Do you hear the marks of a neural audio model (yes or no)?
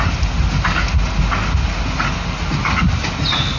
no